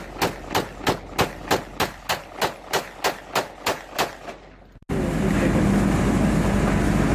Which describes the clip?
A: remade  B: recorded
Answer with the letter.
B